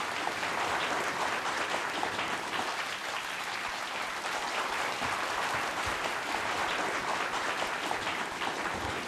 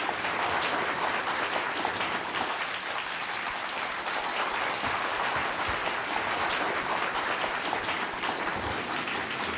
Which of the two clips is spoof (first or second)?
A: first